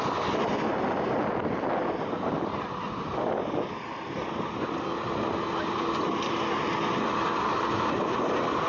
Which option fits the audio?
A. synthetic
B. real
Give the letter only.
B